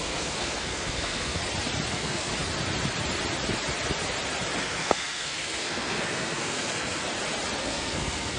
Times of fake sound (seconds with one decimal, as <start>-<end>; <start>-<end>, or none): 0.0-1.4; 1.9-2.3; 4.6-7.0; 7.6-8.4